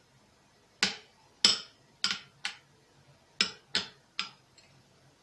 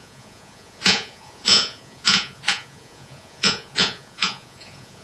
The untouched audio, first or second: first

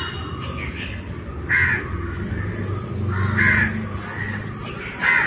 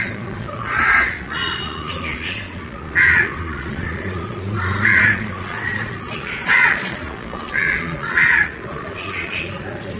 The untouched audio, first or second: first